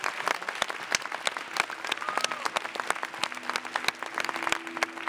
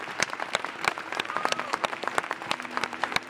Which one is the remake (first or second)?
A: second